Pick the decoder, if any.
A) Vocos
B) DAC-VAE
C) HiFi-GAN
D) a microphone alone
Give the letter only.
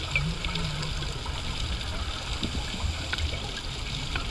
D